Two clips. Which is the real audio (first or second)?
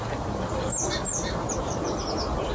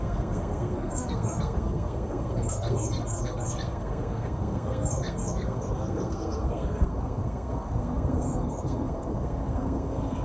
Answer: first